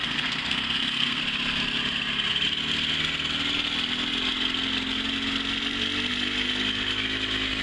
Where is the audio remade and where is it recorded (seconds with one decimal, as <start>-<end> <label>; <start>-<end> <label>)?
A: 0.0-1.2 remade; 1.2-7.6 recorded